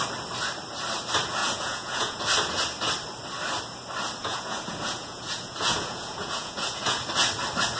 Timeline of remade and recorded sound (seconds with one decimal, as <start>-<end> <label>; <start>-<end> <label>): 0.0-1.4 recorded; 1.4-2.2 remade; 2.2-4.2 recorded; 4.2-7.0 remade; 7.0-7.8 recorded